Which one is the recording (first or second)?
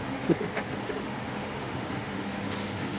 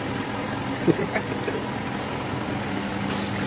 second